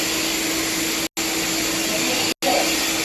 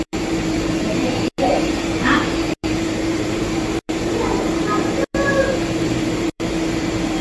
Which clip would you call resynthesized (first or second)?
second